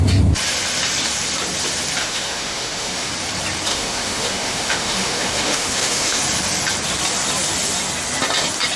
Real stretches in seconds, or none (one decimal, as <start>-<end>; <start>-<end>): 0.0-2.0; 3.1-3.7; 6.2-8.8